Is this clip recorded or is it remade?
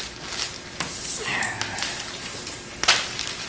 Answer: recorded